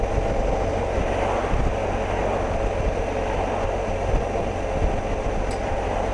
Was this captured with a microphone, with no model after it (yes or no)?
yes